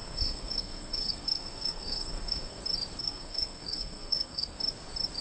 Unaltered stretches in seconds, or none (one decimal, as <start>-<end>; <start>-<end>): 2.6-3.0; 4.6-5.2